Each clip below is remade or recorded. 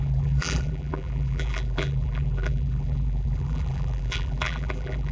remade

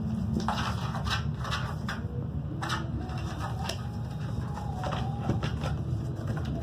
recorded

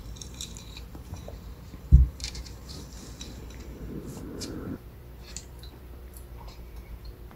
remade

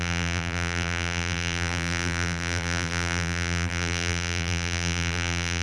remade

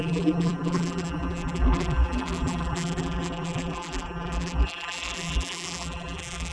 remade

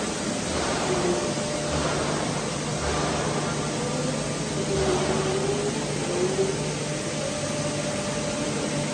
recorded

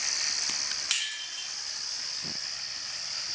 recorded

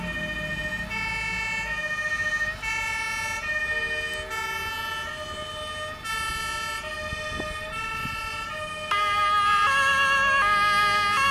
recorded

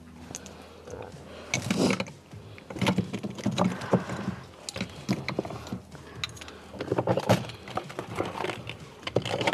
recorded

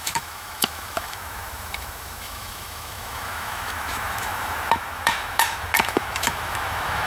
remade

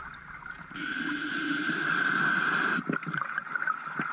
remade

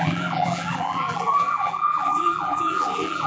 remade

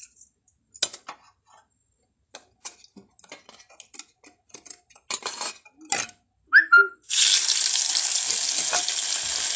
recorded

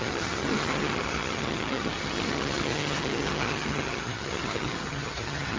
remade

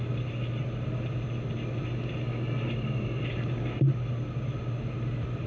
recorded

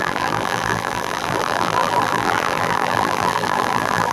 remade